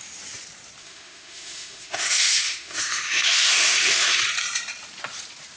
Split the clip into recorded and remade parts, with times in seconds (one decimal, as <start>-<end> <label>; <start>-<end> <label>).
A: 0.0-0.8 recorded; 0.8-4.2 remade; 4.2-5.6 recorded